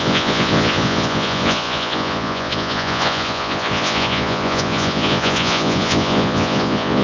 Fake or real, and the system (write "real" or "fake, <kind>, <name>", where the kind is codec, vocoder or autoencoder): fake, vocoder, Vocos